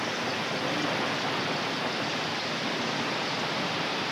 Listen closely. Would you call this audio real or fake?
real